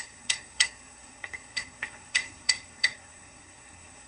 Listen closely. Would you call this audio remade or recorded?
remade